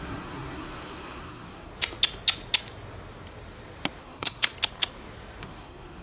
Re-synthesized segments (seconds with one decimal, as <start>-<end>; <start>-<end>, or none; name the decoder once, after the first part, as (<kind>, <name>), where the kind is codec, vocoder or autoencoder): 0.0-1.7 (codec, SNAC); 4.0-4.5; 5.4-6.0